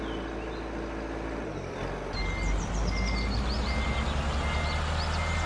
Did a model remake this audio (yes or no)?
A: no